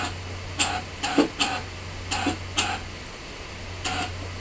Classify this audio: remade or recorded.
recorded